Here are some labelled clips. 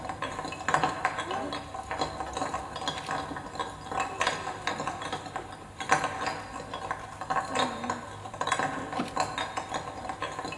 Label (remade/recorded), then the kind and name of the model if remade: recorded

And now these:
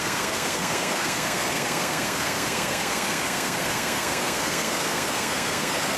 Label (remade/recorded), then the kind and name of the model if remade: remade, codec, SNAC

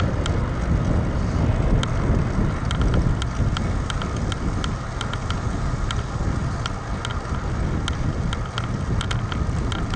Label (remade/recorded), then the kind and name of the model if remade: recorded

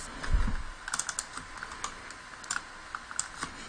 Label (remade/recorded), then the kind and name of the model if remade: recorded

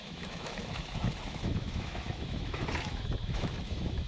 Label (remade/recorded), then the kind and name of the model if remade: remade, autoencoder, DAC-VAE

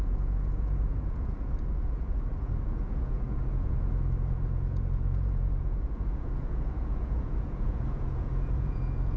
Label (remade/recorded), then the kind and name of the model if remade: remade, vocoder, Vocos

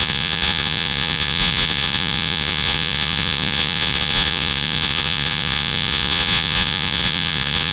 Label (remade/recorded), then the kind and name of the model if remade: remade, vocoder, Vocos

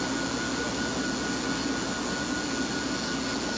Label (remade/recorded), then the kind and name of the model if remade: recorded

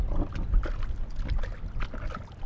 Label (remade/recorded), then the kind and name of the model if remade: recorded